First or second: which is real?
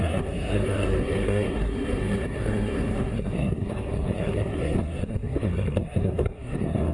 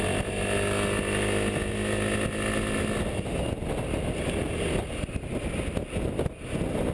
second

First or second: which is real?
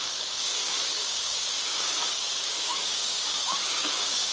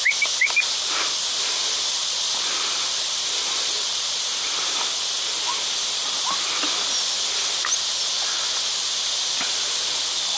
second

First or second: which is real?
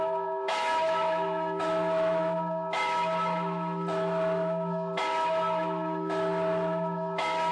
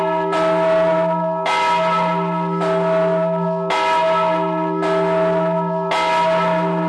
second